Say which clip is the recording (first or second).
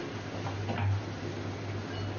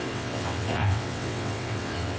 first